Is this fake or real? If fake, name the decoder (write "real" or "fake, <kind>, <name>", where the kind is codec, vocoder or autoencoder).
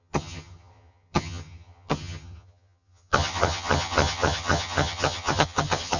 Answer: fake, vocoder, HiFi-GAN